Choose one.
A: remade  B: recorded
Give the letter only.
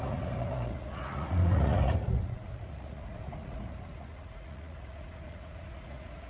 A